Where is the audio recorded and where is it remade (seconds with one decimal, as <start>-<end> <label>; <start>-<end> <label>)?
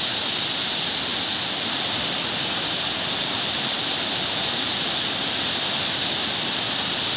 0.0-7.2 recorded